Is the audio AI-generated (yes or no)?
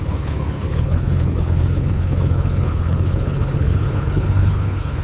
yes